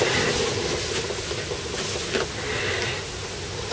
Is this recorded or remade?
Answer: recorded